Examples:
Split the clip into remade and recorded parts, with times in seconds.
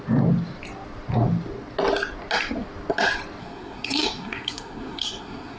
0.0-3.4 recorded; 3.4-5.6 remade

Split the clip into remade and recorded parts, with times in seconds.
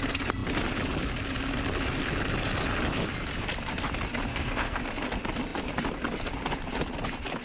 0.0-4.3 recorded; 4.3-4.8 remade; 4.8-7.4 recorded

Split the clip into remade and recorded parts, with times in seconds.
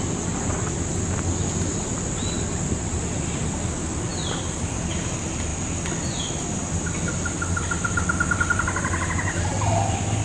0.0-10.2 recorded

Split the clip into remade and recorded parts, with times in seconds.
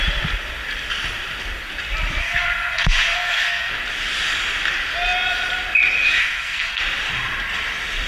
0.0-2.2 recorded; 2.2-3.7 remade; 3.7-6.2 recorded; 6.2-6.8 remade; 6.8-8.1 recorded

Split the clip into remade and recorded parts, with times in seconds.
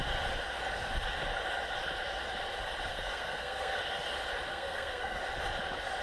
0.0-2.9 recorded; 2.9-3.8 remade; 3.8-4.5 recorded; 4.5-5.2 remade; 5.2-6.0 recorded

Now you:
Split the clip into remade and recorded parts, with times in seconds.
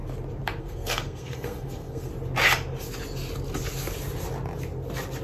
0.0-0.6 recorded; 0.6-2.1 remade; 2.1-5.2 recorded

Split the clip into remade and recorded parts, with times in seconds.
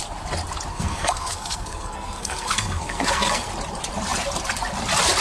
0.0-0.7 recorded; 0.7-3.5 remade; 3.5-5.2 recorded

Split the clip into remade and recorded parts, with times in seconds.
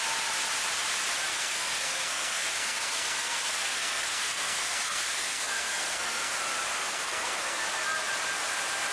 0.0-1.3 recorded; 1.3-6.3 remade; 6.3-6.7 recorded; 6.7-7.6 remade; 7.6-8.9 recorded